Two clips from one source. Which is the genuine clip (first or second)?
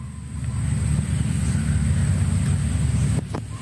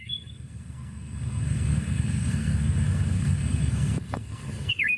first